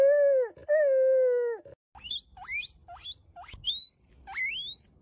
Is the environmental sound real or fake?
real